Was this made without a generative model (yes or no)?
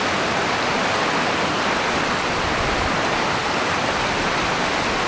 yes